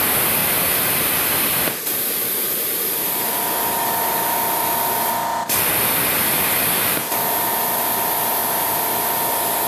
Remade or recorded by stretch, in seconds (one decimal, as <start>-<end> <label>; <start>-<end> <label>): 0.0-0.4 recorded; 0.4-5.1 remade; 5.1-6.9 recorded; 6.9-7.5 remade; 7.5-8.4 recorded; 8.4-9.2 remade; 9.2-9.7 recorded